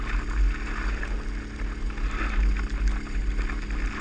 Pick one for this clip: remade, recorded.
recorded